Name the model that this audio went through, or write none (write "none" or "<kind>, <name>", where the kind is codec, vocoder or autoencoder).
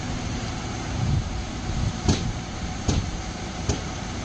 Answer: vocoder, BigVGAN v2